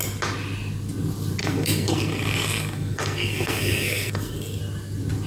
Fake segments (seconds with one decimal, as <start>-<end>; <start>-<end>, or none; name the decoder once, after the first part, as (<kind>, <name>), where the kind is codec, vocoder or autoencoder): 1.4-4.6 (codec, SNAC)